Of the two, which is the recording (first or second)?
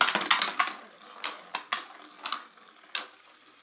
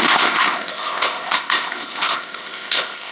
first